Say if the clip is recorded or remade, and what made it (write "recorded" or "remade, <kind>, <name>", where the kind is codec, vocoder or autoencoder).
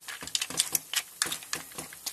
recorded